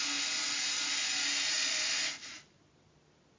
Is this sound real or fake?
real